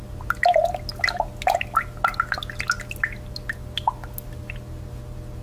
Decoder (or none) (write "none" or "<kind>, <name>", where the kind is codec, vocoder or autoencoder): none